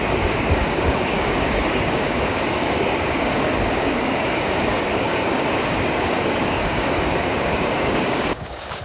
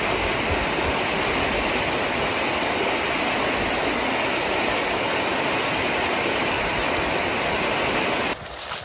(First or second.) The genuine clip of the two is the second